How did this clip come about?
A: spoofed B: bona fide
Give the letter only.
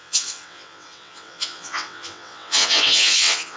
A